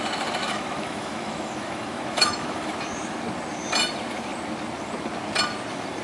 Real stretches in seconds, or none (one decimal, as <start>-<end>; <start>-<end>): 0.0-0.4; 2.7-6.0